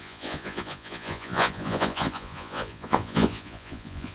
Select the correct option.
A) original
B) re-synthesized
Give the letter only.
B